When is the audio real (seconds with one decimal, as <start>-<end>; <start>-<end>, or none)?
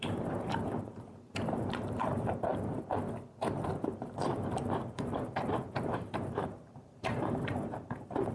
2.5-3.6